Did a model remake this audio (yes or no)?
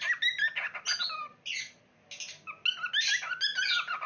no